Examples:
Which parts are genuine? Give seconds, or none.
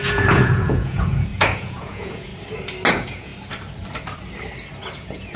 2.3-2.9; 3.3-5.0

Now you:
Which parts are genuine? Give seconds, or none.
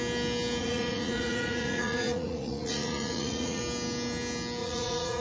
0.0-0.6; 3.6-4.6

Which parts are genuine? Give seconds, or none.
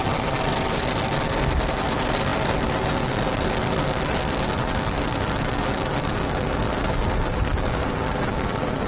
0.0-8.9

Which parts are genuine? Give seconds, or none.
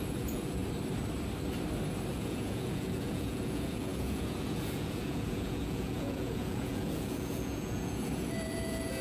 0.6-2.1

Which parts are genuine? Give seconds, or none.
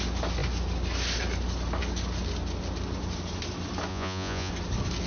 0.0-3.9; 4.5-5.1